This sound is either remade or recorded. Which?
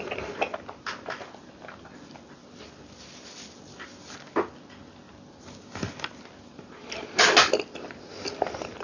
recorded